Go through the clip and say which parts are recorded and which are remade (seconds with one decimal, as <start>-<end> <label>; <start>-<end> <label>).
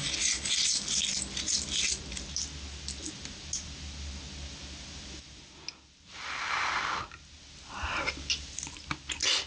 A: 0.0-9.5 recorded